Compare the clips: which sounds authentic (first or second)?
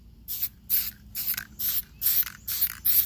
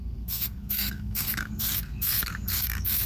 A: first